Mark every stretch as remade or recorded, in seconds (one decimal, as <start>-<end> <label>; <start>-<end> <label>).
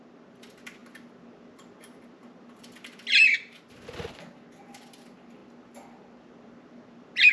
0.0-7.3 recorded